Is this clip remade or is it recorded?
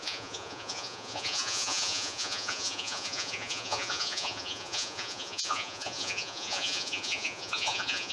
remade